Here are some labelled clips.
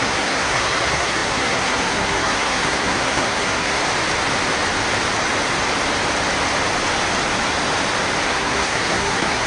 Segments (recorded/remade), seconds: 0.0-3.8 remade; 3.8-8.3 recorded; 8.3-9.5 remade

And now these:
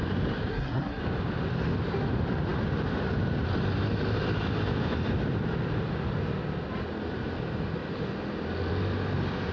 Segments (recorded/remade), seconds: 0.0-0.5 recorded; 0.5-1.0 remade; 1.0-9.5 recorded

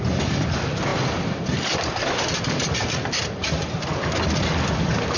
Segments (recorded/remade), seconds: 0.0-5.2 recorded

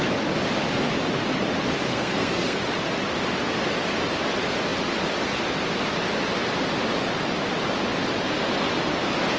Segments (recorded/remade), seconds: 0.0-1.9 recorded; 1.9-2.6 remade; 2.6-9.4 recorded

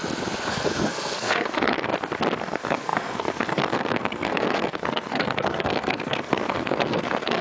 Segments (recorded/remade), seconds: 0.0-0.5 recorded; 0.5-1.9 remade; 1.9-2.4 recorded; 2.4-7.4 remade

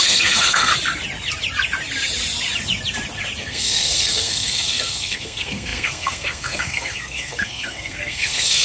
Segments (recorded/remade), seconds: 0.0-0.7 remade; 0.7-3.4 recorded; 3.4-8.6 remade